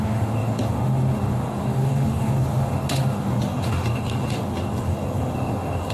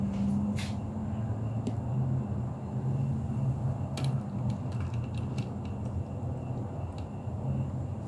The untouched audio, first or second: second